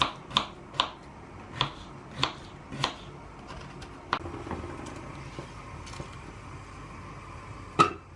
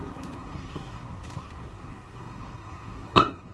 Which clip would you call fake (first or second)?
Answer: second